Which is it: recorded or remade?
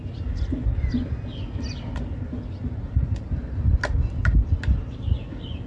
recorded